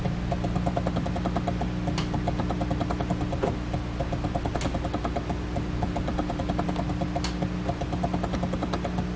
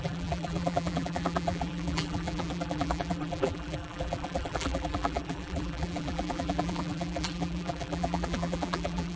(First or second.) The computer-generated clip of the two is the second